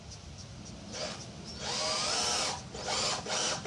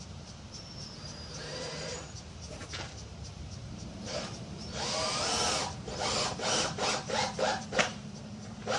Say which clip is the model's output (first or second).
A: second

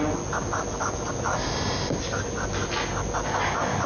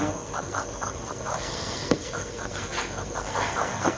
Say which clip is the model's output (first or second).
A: second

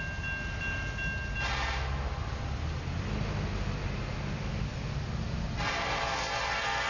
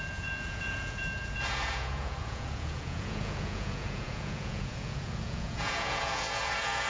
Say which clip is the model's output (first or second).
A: second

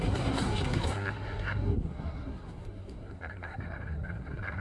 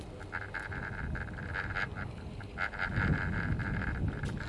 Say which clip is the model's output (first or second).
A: first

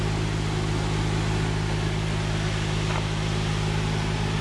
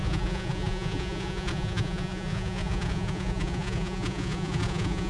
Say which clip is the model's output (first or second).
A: second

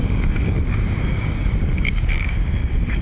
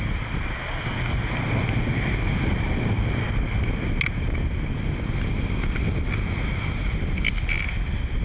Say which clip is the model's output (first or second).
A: first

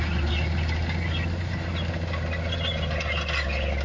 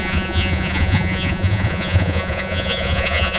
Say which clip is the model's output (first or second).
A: second